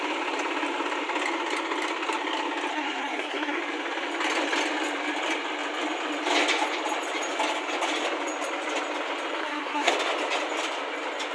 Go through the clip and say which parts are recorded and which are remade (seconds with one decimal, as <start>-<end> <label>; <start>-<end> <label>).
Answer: 0.0-2.7 recorded; 2.7-3.6 remade; 3.6-9.4 recorded; 9.4-9.9 remade; 9.9-11.3 recorded

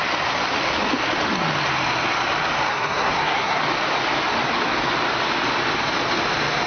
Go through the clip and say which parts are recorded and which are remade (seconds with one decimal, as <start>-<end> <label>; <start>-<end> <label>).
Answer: 0.0-2.7 recorded; 2.7-3.6 remade; 3.6-6.7 recorded

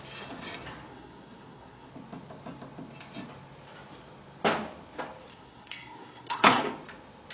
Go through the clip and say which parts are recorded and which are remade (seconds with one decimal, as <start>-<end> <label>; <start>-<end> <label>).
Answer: 0.0-0.9 recorded; 0.9-1.9 remade; 1.9-5.3 recorded; 5.3-6.6 remade; 6.6-7.3 recorded

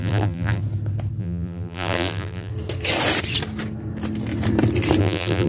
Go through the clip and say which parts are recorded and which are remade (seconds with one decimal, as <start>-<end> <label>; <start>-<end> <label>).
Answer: 0.0-0.6 remade; 0.6-1.2 recorded; 1.2-2.5 remade; 2.5-5.0 recorded; 5.0-5.5 remade